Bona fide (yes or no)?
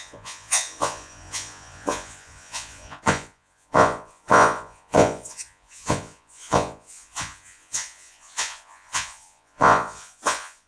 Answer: no